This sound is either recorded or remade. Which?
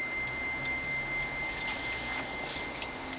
recorded